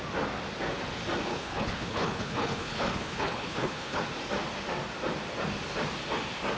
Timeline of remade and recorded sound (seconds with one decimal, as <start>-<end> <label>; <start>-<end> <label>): 0.0-1.3 recorded; 1.3-4.0 remade; 4.0-6.6 recorded